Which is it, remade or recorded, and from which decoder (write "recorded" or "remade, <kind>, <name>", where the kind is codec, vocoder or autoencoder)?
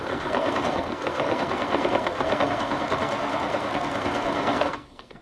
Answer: remade, codec, SNAC